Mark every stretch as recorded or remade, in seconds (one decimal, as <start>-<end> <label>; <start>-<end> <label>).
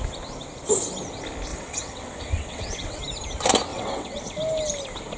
0.0-1.5 recorded; 1.5-3.0 remade; 3.0-3.7 recorded; 3.7-4.2 remade; 4.2-5.2 recorded